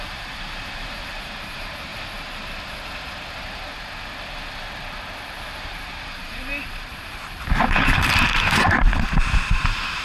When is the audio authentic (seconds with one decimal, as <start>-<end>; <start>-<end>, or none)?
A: 1.9-5.7